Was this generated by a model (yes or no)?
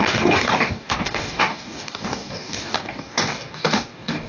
yes